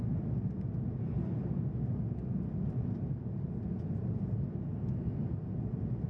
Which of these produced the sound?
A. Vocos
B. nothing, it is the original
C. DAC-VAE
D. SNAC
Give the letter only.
B